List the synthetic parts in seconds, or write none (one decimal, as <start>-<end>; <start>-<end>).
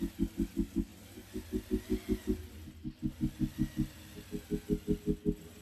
none